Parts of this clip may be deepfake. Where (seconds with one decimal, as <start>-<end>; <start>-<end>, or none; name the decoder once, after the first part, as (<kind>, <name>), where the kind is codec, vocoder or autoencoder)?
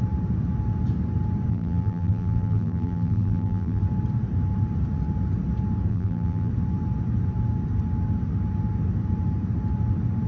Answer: 1.5-3.8 (vocoder, BigVGAN v2); 5.9-6.5